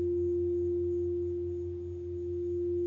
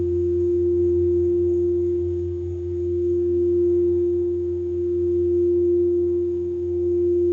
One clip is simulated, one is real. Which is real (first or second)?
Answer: first